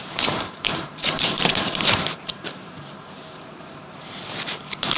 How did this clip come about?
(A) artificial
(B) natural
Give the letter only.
A